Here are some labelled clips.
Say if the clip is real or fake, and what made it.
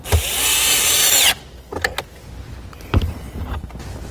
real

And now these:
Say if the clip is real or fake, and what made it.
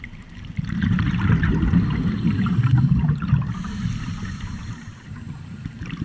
fake, vocoder, BigVGAN v2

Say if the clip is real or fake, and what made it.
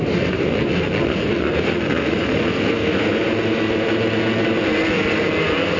real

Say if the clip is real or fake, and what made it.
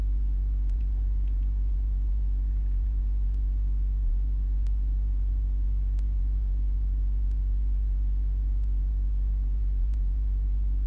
fake, vocoder, Vocos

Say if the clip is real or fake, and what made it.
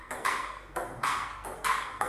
fake, codec, SNAC